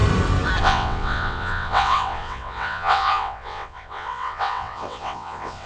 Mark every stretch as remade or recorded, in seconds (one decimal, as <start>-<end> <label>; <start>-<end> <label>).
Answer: 0.0-0.6 recorded; 0.6-5.7 remade